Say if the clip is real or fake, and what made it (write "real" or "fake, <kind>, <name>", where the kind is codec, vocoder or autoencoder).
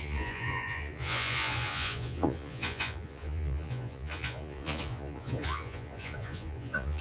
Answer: fake, vocoder, Vocos